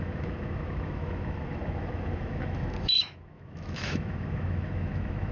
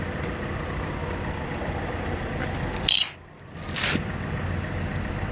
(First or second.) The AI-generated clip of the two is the first